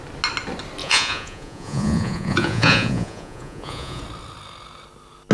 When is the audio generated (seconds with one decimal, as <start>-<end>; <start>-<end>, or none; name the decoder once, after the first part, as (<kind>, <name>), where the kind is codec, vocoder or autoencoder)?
0.8-4.0 (vocoder, Vocos)